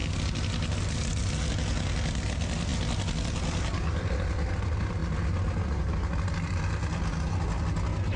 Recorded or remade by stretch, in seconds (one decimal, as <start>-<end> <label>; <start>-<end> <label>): 0.0-8.2 recorded